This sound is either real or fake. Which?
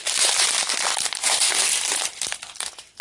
real